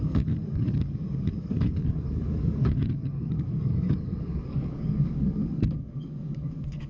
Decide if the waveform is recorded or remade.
remade